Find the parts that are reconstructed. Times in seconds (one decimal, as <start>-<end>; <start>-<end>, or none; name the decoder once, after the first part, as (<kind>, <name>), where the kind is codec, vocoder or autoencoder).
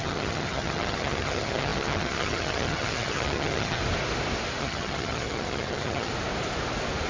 0.0-3.8 (vocoder, HiFi-GAN); 4.6-6.1